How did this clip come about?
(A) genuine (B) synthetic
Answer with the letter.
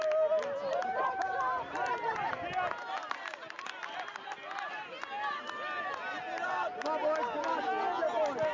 A